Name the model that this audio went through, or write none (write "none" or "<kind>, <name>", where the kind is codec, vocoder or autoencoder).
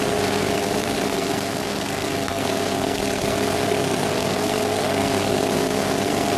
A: codec, SNAC